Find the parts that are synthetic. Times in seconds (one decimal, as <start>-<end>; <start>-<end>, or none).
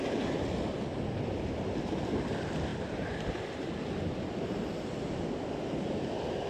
none